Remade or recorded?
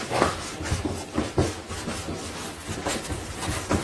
recorded